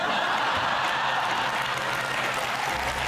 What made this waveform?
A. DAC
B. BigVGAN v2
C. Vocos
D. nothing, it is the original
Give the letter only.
D